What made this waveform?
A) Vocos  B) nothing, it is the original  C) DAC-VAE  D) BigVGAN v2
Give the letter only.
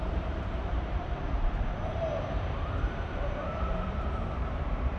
D